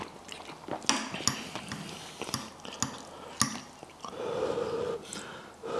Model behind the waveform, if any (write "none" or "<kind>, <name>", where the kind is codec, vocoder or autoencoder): none